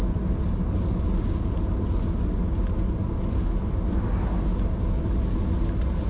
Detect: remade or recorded recorded